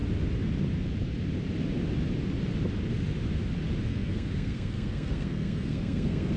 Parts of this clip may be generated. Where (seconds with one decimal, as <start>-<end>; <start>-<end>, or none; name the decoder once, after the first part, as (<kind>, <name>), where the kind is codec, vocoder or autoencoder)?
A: 3.9-6.4 (codec, SNAC)